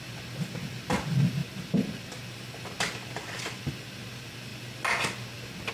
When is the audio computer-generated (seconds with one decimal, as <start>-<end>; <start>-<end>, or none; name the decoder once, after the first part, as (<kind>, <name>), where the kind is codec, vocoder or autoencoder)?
none